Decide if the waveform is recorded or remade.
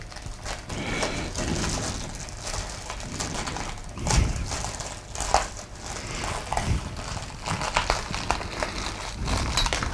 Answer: recorded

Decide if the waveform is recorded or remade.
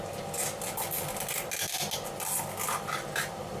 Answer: recorded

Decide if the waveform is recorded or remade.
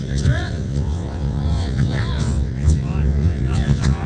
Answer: remade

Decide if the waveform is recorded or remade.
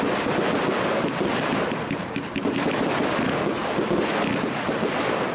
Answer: recorded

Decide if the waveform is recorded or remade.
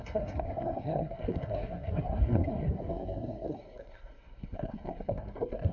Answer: remade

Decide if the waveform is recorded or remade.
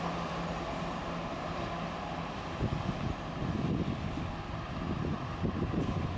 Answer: recorded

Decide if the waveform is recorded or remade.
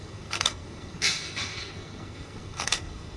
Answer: remade